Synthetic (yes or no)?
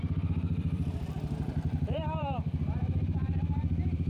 yes